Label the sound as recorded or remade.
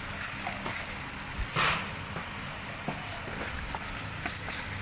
recorded